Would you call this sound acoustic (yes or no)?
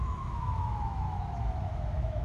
no